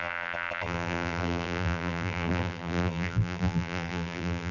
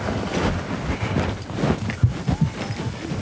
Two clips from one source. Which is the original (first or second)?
second